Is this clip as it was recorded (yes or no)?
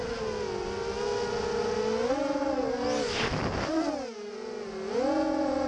yes